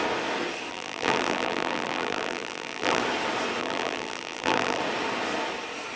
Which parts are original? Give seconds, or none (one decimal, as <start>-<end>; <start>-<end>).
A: 0.0-0.7; 3.0-3.6; 4.8-6.0